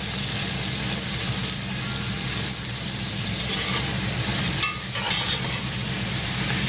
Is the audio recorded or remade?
recorded